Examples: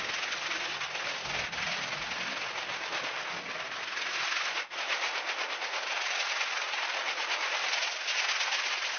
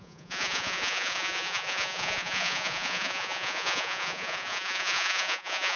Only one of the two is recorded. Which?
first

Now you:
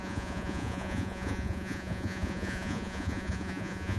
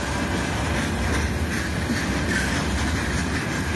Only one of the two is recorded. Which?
second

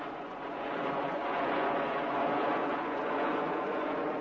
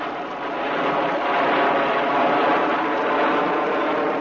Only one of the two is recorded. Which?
second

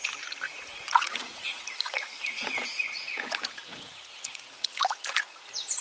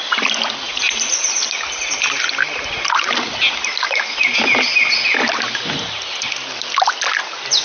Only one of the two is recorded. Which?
second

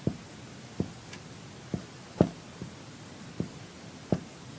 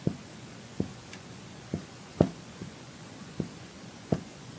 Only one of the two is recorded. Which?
first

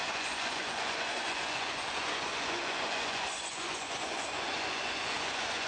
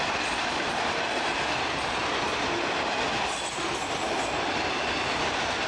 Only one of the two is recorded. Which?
second